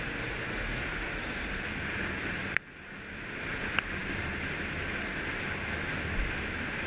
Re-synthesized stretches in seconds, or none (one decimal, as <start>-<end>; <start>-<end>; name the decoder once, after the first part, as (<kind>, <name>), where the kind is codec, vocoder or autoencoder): none